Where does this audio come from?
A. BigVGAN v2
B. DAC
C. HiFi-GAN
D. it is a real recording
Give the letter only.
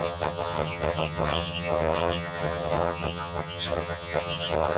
C